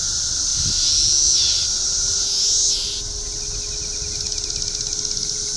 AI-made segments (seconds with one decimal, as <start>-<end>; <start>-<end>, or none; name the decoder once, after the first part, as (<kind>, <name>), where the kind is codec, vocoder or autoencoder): none